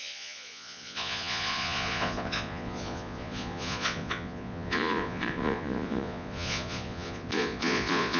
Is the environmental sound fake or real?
fake